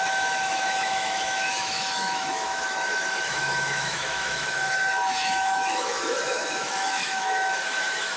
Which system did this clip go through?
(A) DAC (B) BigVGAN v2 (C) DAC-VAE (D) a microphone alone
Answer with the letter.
C